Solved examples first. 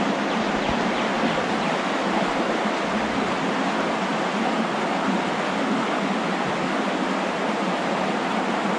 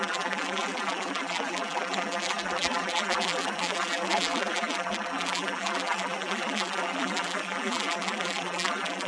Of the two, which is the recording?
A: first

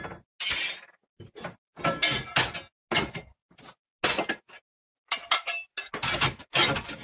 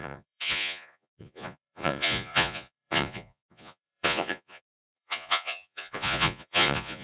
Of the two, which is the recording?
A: first